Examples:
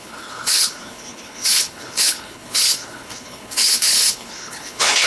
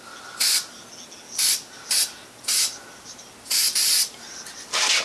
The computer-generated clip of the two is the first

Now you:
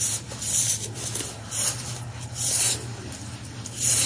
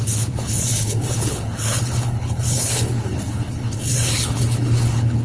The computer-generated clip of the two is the second